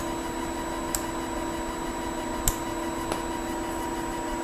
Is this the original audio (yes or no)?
yes